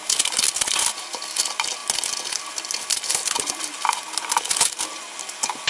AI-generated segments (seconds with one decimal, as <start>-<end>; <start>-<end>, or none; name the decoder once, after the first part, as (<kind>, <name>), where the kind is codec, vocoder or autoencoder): none